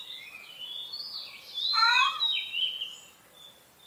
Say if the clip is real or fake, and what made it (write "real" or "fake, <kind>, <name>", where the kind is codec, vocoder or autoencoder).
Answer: real